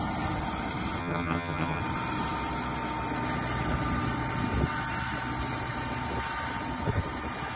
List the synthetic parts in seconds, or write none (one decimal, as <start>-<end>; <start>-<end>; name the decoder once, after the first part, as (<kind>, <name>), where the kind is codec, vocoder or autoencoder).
1.0-1.8 (vocoder, HiFi-GAN)